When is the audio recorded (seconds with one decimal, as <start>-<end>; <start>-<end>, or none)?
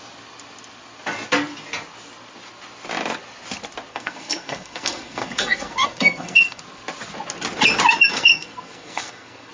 0.0-3.9; 6.6-8.1